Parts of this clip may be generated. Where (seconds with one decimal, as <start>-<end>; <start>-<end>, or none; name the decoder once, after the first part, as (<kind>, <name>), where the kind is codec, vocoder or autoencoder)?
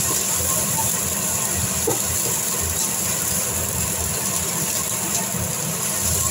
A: none